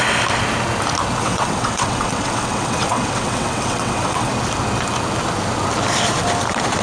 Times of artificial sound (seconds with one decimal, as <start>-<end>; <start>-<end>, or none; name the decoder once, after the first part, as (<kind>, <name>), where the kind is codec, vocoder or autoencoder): 1.2-4.3 (vocoder, WaveNeXt)